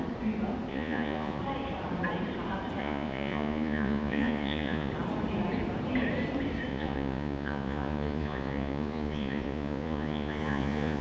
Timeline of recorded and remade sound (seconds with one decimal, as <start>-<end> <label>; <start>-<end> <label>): 0.0-0.7 recorded; 0.7-1.4 remade; 1.4-2.8 recorded; 2.8-4.9 remade; 4.9-6.7 recorded; 6.7-11.0 remade